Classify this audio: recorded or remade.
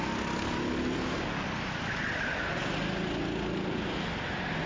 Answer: recorded